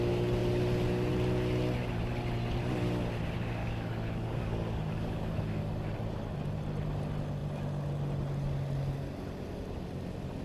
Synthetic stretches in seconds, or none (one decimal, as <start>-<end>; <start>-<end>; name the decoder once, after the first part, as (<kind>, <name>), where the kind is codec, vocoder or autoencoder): 3.6-5.6 (codec, DAC)